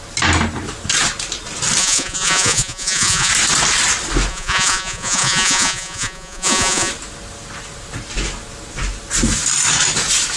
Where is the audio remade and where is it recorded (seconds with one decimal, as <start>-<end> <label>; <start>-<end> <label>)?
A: 0.0-1.8 recorded; 1.8-3.3 remade; 3.3-4.3 recorded; 4.3-6.9 remade; 6.9-10.4 recorded